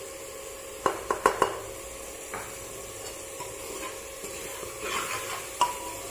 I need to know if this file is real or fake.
real